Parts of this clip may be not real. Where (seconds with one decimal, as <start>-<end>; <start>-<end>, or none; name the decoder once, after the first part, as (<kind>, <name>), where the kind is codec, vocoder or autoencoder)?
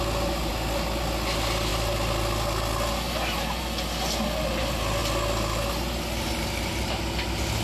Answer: none